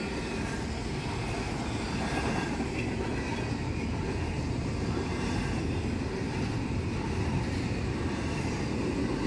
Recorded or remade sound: recorded